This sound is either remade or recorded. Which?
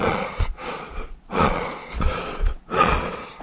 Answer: remade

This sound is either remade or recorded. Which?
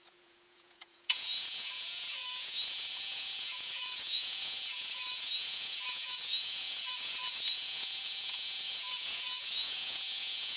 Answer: remade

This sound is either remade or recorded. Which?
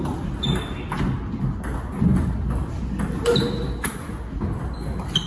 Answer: recorded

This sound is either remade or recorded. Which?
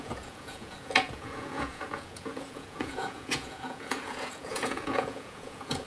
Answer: remade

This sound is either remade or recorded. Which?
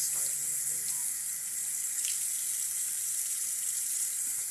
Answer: recorded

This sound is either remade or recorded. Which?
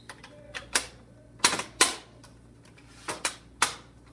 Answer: recorded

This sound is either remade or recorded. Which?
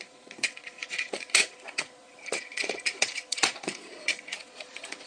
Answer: remade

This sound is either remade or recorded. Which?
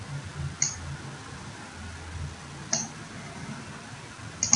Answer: recorded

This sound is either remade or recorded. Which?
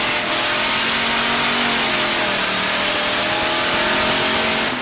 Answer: recorded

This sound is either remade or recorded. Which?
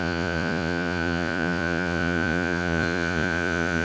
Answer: remade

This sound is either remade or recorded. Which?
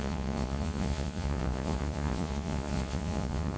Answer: remade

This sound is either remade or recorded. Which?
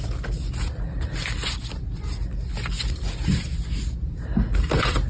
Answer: recorded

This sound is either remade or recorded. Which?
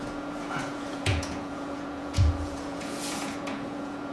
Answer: remade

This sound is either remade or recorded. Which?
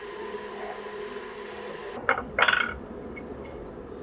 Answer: recorded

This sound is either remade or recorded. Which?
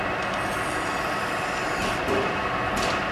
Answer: recorded